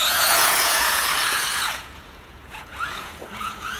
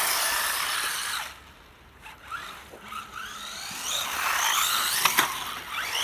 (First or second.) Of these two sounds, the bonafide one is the second